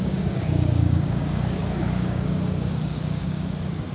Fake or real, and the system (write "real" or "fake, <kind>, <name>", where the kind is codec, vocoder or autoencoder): fake, codec, DAC